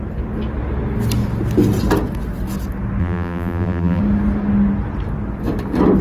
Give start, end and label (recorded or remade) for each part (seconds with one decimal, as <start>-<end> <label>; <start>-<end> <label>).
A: 0.0-3.0 recorded; 3.0-4.0 remade; 4.0-6.0 recorded